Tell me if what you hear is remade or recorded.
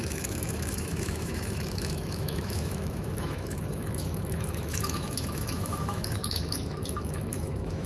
remade